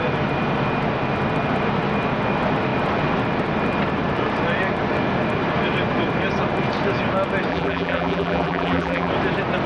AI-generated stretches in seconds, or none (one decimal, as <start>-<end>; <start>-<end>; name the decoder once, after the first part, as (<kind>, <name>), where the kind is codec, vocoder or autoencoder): 7.5-9.1 (vocoder, BigVGAN v2)